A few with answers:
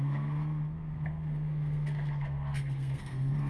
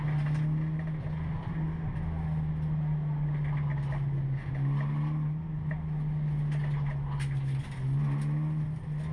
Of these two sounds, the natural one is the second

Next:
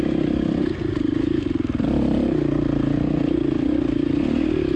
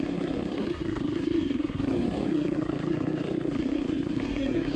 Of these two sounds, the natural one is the first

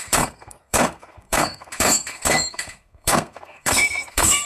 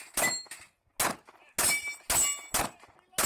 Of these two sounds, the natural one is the second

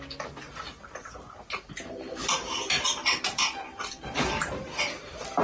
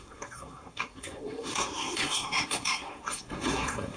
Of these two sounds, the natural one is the first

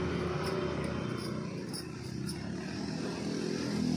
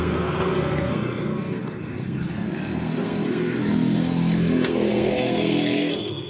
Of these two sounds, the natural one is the first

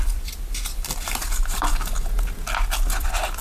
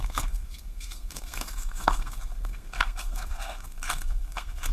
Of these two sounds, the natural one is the first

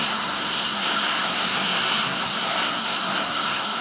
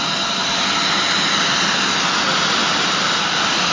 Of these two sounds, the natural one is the second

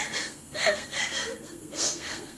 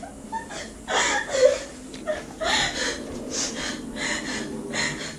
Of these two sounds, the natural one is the second